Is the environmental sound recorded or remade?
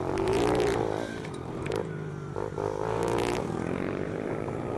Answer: remade